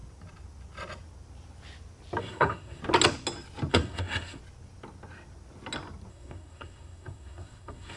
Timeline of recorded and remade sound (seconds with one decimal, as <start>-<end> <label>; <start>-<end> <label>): 0.0-2.2 recorded; 2.2-2.8 remade; 2.8-3.7 recorded; 3.7-4.4 remade; 4.4-6.1 recorded; 6.1-8.0 remade